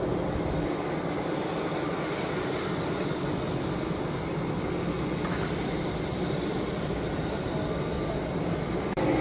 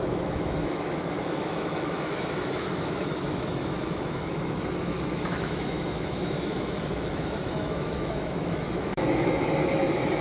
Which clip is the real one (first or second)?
first